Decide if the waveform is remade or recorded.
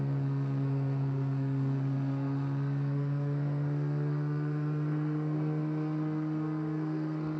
remade